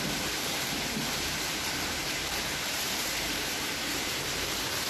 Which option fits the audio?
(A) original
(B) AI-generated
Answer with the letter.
B